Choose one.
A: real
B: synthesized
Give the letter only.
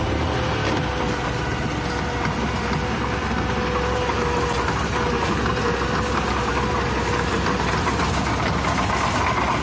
A